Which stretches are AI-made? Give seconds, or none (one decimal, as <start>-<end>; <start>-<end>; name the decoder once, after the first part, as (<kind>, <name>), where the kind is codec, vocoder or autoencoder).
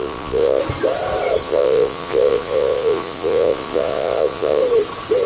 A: 0.0-0.6 (vocoder, Vocos); 1.4-4.6